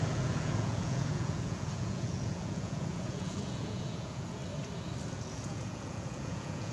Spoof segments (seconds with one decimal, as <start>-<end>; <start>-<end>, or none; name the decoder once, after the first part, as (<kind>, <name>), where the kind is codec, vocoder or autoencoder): 0.0-4.4 (vocoder, Vocos); 5.1-6.7